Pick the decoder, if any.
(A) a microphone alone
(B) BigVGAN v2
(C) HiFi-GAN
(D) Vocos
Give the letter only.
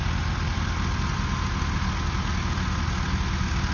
A